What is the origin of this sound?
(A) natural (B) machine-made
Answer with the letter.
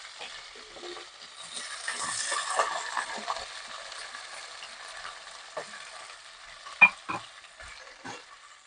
A